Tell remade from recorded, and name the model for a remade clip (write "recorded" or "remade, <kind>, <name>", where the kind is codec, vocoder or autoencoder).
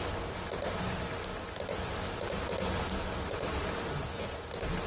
recorded